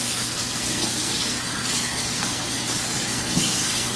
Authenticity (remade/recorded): remade